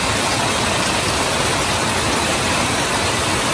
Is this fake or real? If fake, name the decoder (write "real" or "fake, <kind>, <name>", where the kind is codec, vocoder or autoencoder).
real